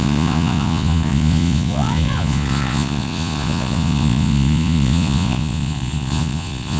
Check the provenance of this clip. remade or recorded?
remade